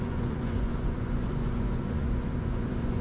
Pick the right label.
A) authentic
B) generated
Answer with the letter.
B